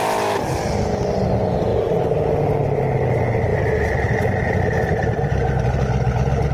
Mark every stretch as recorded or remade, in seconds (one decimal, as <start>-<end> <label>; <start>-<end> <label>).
0.0-6.5 recorded